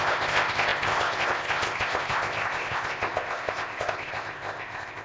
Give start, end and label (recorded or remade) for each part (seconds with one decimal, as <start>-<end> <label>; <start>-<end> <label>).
0.0-5.0 remade